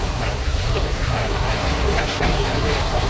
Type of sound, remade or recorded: remade